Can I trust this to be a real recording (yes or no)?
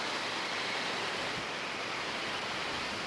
yes